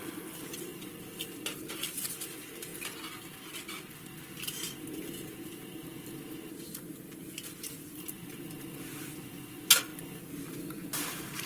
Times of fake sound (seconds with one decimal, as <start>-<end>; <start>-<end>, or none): 0.0-2.7; 7.8-9.9; 11.1-11.5

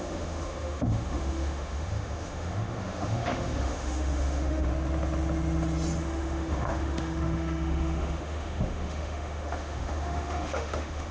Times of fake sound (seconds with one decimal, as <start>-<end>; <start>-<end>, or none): 0.0-4.7; 6.0-11.1

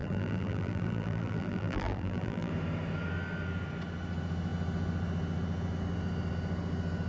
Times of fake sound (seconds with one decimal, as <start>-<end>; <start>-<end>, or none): 0.0-2.5

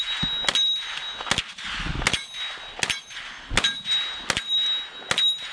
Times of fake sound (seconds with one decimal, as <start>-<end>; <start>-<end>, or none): none